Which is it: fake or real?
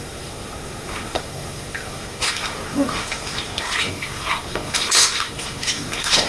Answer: fake